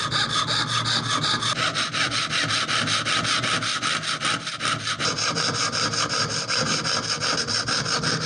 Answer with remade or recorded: recorded